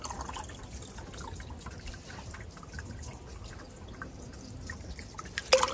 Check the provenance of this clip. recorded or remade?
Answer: recorded